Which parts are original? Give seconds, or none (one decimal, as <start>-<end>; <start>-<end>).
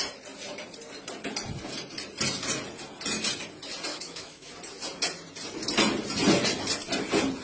0.0-3.9; 4.5-7.4